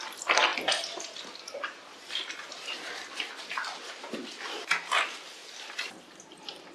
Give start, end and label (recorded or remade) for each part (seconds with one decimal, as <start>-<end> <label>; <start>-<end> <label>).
0.0-0.5 recorded; 0.5-3.4 remade; 3.4-6.7 recorded